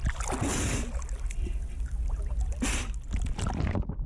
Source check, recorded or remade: recorded